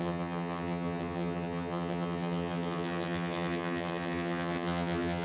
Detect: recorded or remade remade